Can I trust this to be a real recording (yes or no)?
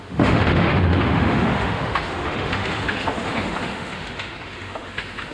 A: no